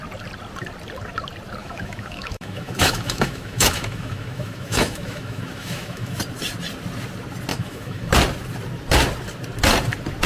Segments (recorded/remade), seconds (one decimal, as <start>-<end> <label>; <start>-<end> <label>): 0.0-1.6 recorded; 1.6-6.2 remade; 6.2-7.5 recorded; 7.5-8.1 remade; 8.1-10.3 recorded